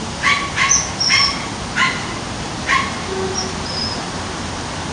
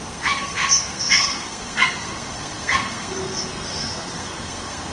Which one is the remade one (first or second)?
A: second